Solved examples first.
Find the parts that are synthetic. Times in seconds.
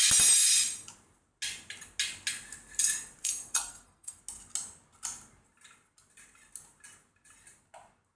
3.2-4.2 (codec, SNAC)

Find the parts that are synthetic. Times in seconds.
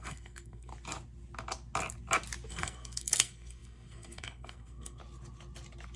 0.0-0.7 (codec, SNAC); 2.5-5.0